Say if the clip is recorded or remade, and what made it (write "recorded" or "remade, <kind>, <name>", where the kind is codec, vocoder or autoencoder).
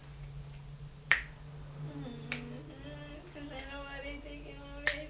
recorded